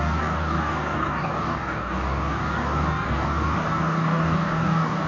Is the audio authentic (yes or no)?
no